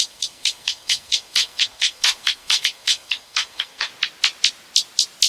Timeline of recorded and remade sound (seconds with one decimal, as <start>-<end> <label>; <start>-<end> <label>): 0.0-3.9 remade; 3.9-5.3 recorded